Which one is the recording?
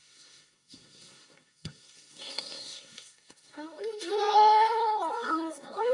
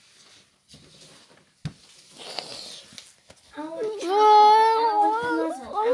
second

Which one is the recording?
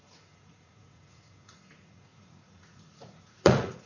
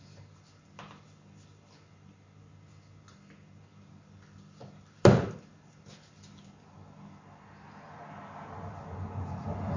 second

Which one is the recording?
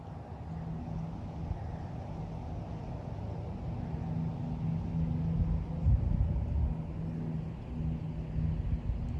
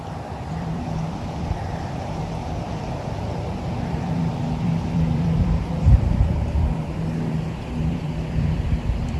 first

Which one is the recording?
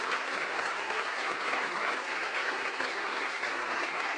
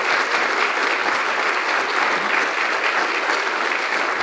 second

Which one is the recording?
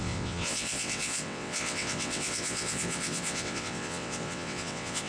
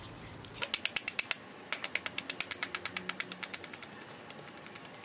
second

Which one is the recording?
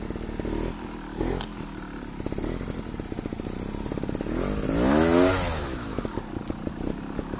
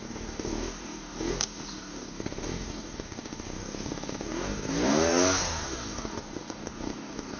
first